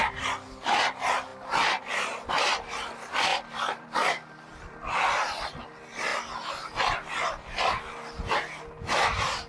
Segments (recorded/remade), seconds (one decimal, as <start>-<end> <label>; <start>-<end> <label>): 0.0-3.3 recorded; 3.3-5.5 remade; 5.5-9.5 recorded